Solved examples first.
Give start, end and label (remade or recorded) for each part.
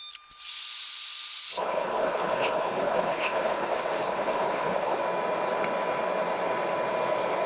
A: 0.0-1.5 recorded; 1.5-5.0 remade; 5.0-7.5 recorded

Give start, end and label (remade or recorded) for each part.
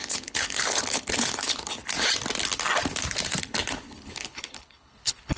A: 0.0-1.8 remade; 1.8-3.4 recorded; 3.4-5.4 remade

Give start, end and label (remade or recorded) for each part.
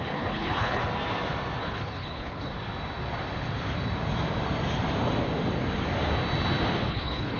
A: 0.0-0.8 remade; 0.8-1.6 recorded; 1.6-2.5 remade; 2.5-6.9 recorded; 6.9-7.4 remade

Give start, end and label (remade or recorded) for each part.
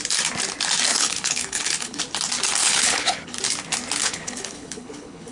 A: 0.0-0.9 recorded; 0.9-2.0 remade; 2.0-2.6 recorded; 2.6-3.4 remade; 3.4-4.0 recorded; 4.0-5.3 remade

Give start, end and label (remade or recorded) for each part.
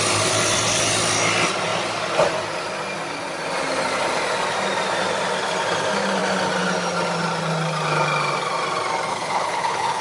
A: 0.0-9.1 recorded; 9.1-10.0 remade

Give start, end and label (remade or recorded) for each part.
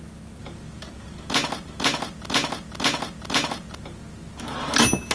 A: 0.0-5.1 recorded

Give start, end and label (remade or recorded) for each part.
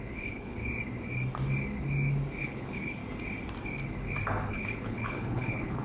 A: 0.0-0.6 remade; 0.6-2.4 recorded; 2.4-3.0 remade; 3.0-4.5 recorded; 4.5-5.8 remade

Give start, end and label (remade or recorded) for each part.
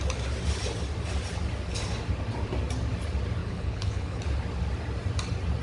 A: 0.0-3.4 recorded; 3.4-4.2 remade; 4.2-5.6 recorded